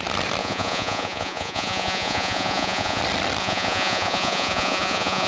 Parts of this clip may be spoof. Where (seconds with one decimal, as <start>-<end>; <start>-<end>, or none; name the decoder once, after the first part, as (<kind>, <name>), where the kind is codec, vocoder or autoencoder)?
0.4-3.0 (vocoder, Vocos); 3.4-5.3